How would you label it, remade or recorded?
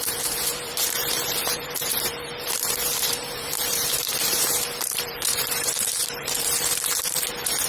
remade